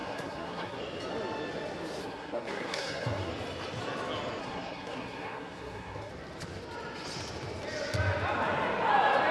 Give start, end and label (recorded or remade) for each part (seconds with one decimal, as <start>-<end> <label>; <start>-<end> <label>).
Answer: 0.0-0.8 remade; 0.8-2.0 recorded; 2.0-3.3 remade; 3.3-4.4 recorded; 4.4-6.1 remade; 6.1-9.3 recorded